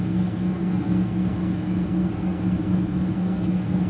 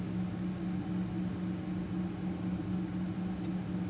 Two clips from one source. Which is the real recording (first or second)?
second